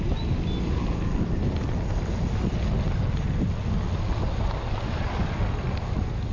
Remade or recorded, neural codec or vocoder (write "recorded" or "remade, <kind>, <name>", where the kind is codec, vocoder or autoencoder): recorded